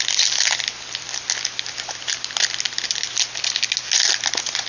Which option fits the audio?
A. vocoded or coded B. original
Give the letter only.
B